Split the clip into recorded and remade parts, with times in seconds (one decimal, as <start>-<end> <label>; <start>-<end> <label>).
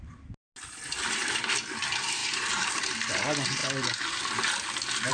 0.0-2.2 recorded; 2.2-2.9 remade; 2.9-5.1 recorded